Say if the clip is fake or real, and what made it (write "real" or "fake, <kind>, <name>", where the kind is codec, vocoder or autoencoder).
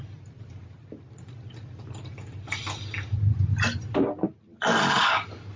real